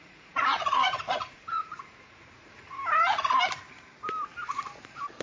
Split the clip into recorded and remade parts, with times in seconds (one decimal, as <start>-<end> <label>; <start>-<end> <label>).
0.0-2.8 remade; 2.8-4.5 recorded; 4.5-5.2 remade